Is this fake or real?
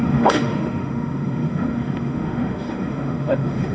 fake